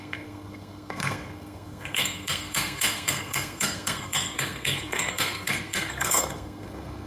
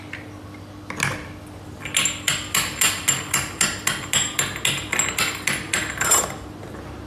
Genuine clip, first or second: second